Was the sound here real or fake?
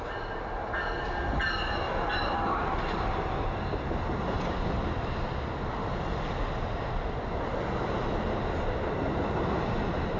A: real